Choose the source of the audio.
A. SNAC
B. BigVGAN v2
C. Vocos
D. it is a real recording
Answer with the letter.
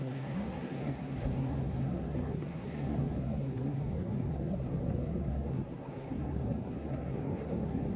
A